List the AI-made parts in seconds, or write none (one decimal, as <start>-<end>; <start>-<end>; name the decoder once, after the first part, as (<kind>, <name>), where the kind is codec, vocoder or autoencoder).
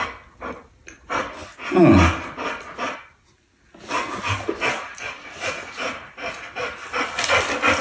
none